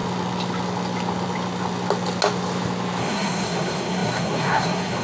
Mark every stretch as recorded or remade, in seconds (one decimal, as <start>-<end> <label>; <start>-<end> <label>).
0.0-3.0 recorded; 3.0-5.0 remade

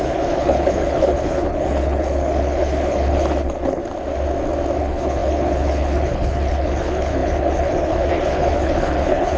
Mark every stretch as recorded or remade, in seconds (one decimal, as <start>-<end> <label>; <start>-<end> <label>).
0.0-3.8 remade; 3.8-4.8 recorded; 4.8-9.4 remade

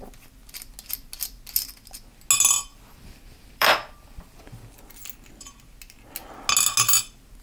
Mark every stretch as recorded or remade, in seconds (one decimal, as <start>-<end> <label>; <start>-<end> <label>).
0.0-2.7 recorded; 2.7-4.8 remade; 4.8-7.4 recorded

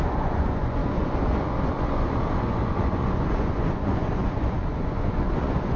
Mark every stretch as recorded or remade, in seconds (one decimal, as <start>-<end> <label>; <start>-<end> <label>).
0.0-5.8 remade